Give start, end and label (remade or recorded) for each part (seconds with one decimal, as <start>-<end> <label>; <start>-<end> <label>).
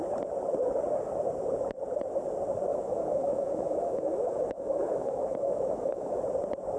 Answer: 0.0-2.7 recorded; 2.7-6.2 remade; 6.2-6.8 recorded